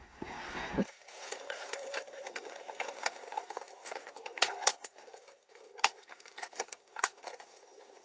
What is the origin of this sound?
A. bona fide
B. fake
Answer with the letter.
B